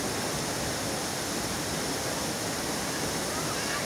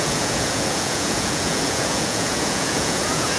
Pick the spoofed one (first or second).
second